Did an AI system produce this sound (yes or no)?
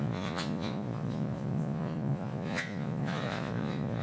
yes